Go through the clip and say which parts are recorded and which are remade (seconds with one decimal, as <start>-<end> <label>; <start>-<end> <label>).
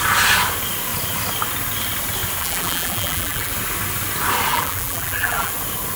0.0-2.4 recorded; 2.4-3.5 remade; 3.5-4.5 recorded; 4.5-5.5 remade; 5.5-6.0 recorded